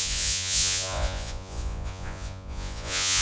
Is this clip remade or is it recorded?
remade